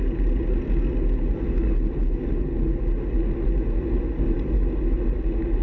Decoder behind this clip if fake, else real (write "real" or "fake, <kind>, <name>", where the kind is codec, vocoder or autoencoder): real